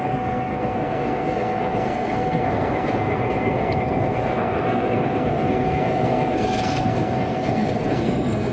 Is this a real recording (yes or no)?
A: no